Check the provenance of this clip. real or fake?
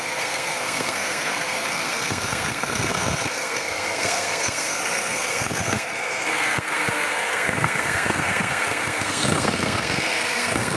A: fake